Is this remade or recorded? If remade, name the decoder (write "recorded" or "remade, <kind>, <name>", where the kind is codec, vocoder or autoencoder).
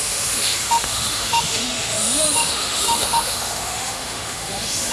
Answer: remade, autoencoder, DAC-VAE